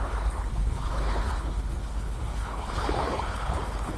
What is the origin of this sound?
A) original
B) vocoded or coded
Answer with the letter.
B